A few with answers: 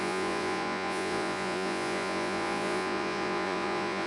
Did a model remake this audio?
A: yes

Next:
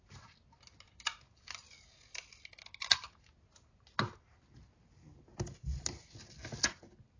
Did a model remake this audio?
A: no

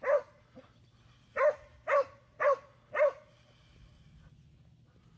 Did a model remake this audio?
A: no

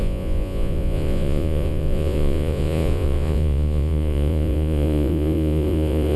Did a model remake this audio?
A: yes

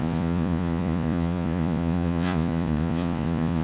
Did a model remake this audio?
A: yes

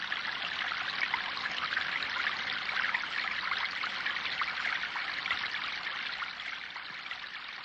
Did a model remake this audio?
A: no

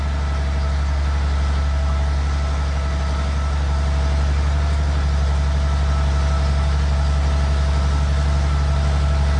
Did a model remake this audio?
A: no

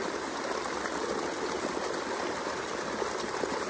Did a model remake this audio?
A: no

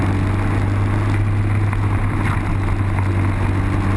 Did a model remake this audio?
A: no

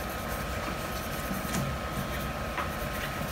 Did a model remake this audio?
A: no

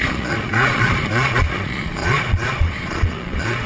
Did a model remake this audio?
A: yes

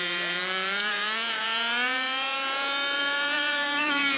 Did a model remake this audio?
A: yes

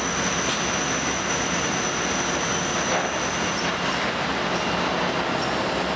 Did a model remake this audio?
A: no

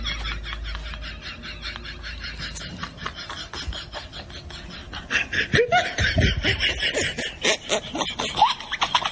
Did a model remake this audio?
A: no